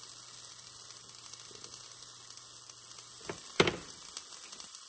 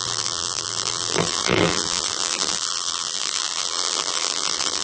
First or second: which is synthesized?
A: second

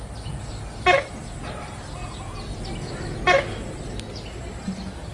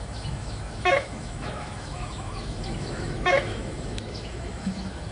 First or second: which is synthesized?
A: second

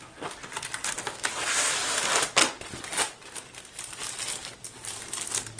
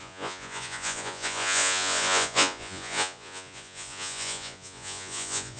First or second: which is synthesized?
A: second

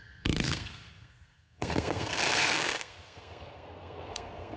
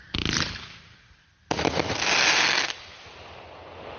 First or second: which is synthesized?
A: first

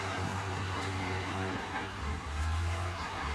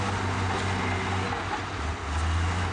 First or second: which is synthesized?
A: first